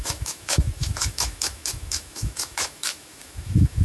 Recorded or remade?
remade